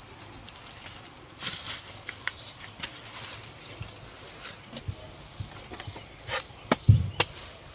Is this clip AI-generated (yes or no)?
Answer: no